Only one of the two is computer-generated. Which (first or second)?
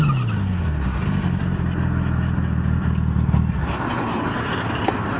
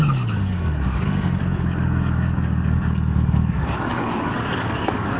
second